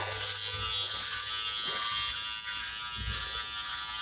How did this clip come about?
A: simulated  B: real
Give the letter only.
B